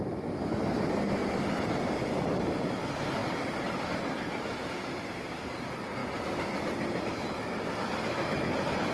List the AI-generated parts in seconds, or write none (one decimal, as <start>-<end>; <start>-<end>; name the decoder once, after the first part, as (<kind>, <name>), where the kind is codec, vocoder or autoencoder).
none